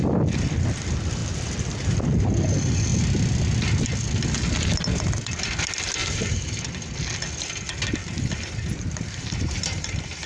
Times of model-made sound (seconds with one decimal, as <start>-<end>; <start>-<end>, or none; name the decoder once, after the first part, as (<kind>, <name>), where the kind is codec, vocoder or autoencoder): 1.2-2.0 (vocoder, BigVGAN v2); 6.0-6.7; 8.0-10.3